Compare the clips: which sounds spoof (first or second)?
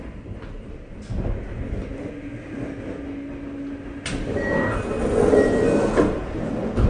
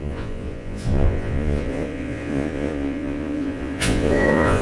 second